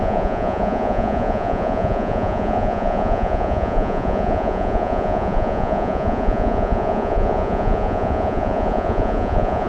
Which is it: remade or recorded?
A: remade